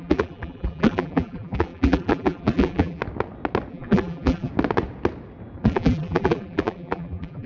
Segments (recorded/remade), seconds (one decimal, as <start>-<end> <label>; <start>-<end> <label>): 0.0-3.0 remade; 3.0-3.7 recorded; 3.7-4.5 remade; 4.5-5.6 recorded; 5.6-7.5 remade